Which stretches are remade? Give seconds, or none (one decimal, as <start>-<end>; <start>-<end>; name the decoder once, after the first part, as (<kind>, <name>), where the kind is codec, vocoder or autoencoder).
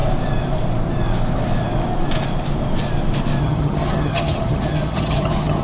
3.4-5.6 (vocoder, HiFi-GAN)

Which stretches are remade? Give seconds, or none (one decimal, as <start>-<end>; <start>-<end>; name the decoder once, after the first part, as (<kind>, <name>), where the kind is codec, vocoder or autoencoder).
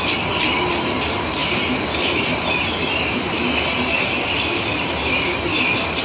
none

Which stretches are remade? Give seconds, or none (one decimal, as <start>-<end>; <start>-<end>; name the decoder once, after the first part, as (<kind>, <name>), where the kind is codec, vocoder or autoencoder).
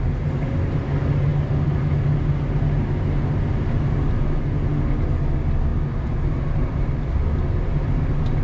none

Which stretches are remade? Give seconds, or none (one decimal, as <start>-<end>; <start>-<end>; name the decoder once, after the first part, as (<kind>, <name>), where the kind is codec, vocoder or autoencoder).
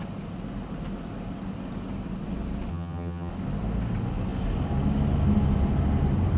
2.7-3.3 (vocoder, HiFi-GAN)